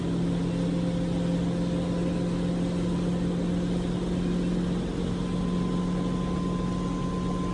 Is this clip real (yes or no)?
yes